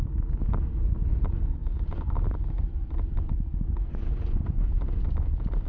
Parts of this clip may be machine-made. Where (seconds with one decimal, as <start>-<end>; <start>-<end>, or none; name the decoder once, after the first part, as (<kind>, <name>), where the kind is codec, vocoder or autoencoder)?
none